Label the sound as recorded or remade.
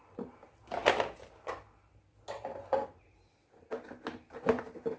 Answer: recorded